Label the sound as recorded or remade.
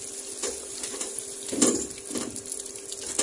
remade